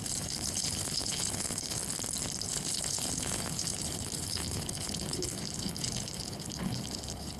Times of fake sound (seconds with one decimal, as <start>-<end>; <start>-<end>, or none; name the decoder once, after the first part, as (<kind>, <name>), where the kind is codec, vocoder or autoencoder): 0.0-1.8 (codec, HILCodec); 2.5-7.4

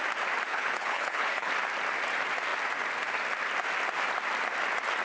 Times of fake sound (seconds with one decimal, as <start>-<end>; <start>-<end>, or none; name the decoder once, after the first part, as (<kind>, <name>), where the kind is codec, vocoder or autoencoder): 0.5-1.5 (codec, HILCodec)